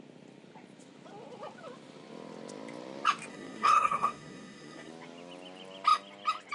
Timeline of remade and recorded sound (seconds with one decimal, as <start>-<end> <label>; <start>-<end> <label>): 0.0-3.3 recorded; 3.3-4.9 remade; 4.9-6.5 recorded